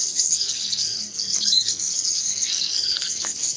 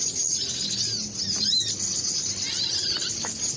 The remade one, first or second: first